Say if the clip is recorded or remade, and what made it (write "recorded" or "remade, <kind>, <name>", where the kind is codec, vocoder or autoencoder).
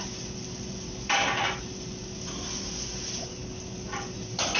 recorded